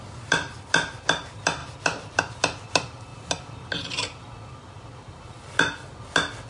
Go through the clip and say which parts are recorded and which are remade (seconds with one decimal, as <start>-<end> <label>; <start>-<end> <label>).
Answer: 0.0-6.5 recorded